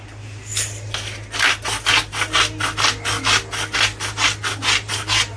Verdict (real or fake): real